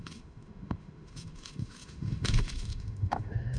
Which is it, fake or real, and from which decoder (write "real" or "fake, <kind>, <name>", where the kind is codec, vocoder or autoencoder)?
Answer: fake, autoencoder, DAC-VAE